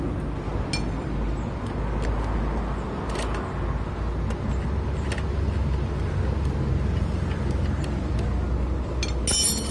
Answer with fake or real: real